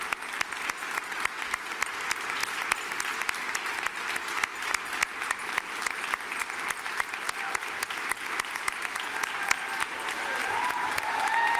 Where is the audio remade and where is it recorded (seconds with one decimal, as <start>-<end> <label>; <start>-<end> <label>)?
0.0-10.4 recorded; 10.4-11.6 remade